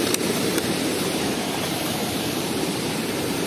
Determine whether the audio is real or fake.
fake